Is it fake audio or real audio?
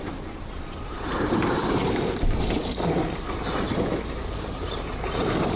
fake